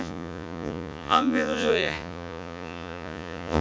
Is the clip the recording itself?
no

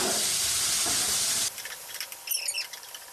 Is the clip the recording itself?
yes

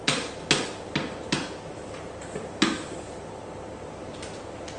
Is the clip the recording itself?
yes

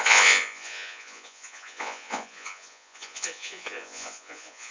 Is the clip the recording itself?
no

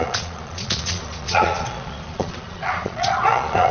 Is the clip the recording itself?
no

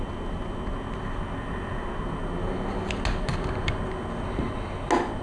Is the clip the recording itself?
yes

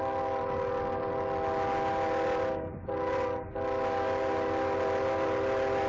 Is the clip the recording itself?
yes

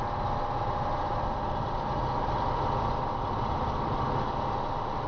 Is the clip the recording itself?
yes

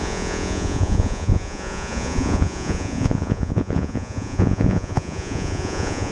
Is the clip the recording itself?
no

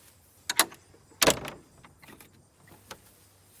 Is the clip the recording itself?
yes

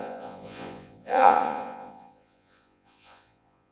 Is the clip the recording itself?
no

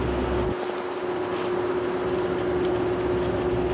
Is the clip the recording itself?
yes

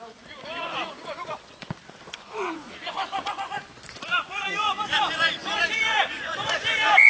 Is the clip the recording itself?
no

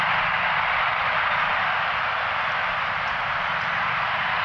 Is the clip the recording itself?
yes